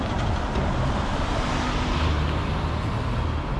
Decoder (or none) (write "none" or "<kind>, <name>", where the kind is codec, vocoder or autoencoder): none